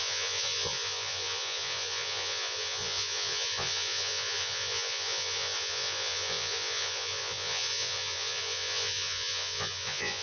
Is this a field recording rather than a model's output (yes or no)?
no